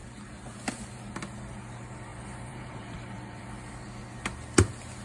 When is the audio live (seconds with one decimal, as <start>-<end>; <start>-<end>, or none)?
0.0-2.1; 3.4-5.0